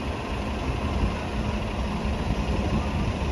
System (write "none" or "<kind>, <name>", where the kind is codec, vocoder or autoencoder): vocoder, BigVGAN v2